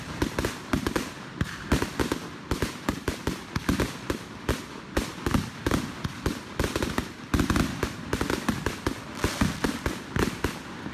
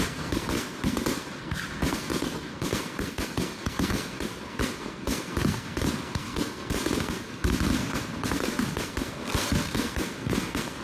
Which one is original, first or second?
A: first